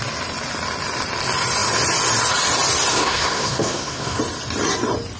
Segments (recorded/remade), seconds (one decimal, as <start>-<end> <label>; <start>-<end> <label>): 0.0-2.9 recorded; 2.9-4.2 remade; 4.2-5.2 recorded

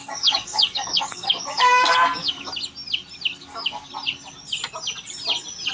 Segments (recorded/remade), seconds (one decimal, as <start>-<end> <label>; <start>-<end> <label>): 0.0-2.5 remade; 2.5-3.4 recorded; 3.4-3.9 remade; 3.9-5.7 recorded

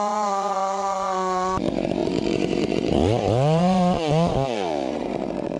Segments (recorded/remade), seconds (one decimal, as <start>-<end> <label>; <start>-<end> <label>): 0.0-5.6 remade